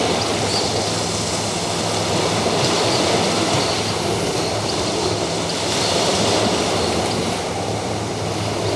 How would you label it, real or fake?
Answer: real